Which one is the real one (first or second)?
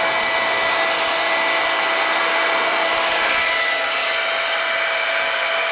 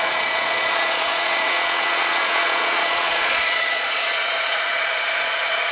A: first